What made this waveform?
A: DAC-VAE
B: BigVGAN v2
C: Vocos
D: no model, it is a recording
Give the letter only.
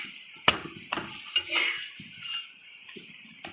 D